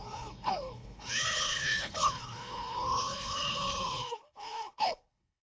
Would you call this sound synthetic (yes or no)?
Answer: yes